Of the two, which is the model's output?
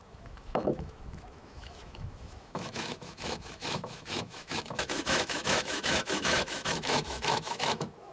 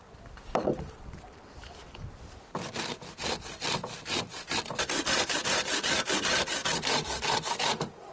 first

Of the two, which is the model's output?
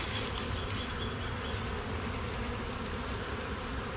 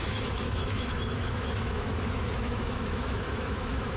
second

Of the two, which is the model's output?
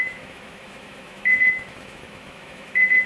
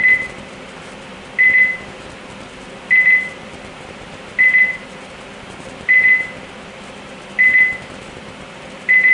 first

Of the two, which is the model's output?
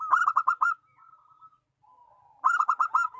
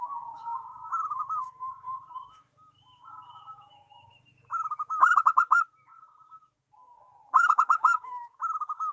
second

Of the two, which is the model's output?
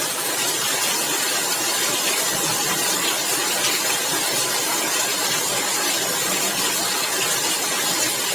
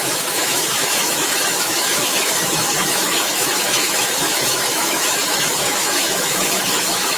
second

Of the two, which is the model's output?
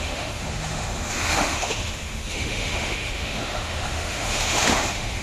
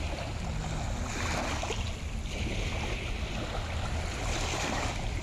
first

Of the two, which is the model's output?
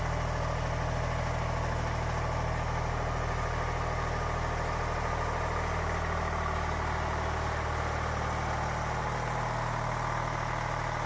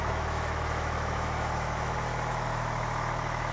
second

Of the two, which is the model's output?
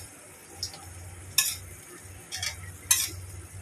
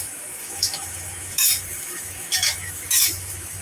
second